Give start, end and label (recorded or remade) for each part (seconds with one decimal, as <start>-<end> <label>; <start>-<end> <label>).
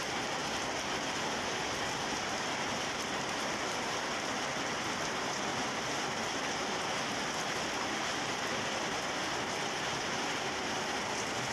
0.0-5.5 remade; 5.5-7.5 recorded; 7.5-11.5 remade